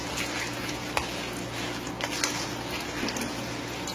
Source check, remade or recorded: recorded